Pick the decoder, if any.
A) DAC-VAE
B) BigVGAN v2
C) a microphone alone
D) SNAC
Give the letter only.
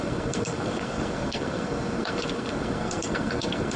D